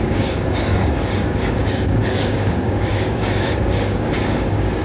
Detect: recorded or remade remade